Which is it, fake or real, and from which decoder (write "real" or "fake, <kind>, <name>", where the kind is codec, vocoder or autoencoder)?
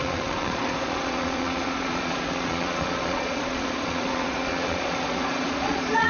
fake, vocoder, Vocos